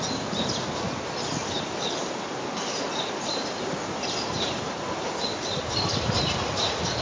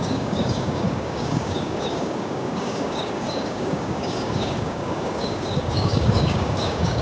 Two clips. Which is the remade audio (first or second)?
second